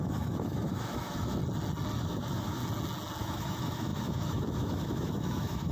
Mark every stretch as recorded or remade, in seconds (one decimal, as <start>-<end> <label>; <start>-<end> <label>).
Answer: 0.0-1.4 remade; 1.4-2.0 recorded; 2.0-2.6 remade; 2.6-3.2 recorded; 3.2-5.7 remade